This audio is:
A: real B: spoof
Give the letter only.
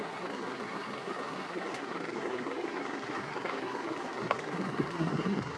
B